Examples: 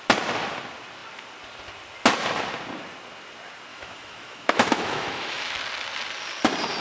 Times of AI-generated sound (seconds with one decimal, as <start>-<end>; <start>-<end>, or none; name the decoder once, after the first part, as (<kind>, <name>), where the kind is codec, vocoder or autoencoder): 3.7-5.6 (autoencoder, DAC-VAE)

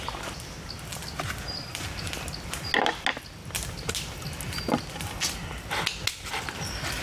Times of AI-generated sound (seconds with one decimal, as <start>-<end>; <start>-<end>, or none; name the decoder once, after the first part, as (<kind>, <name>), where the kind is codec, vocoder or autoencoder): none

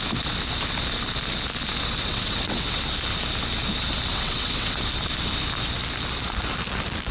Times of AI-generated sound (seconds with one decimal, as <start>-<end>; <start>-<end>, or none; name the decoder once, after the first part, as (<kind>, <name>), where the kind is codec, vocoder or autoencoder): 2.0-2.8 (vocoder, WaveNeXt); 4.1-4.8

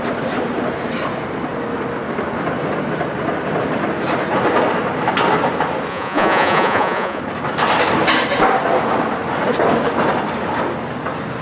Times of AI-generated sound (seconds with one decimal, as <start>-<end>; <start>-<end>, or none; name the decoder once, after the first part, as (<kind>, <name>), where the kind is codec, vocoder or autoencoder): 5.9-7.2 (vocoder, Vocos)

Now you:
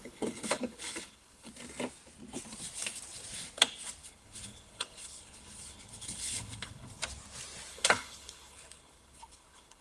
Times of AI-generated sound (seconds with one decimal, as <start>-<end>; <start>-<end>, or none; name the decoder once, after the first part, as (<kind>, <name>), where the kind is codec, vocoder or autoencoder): 0.0-1.5 (codec, HILCodec); 4.0-7.0; 7.7-9.8

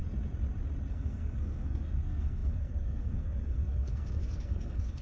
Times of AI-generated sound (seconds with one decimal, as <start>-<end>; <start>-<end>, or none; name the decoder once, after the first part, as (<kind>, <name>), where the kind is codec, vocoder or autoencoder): 0.9-5.0 (codec, SNAC)

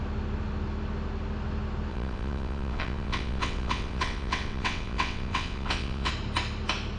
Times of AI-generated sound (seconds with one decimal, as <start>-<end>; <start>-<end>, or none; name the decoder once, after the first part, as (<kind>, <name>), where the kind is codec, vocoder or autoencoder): 1.9-6.1 (vocoder, WaveNeXt)

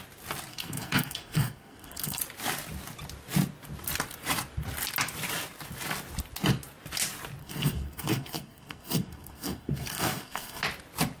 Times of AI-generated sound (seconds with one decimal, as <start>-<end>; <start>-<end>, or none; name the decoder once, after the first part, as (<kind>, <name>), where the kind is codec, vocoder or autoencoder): 0.5-2.2 (codec, SNAC); 7.4-10.6